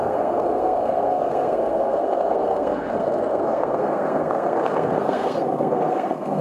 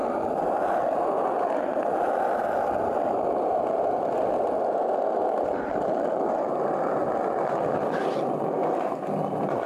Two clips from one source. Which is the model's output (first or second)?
first